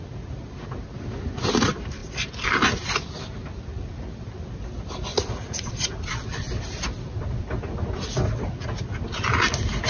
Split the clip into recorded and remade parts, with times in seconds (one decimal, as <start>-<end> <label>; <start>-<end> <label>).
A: 0.0-5.1 recorded; 5.1-6.0 remade; 6.0-9.9 recorded